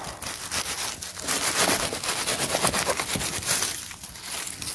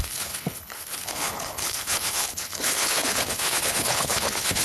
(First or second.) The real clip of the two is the first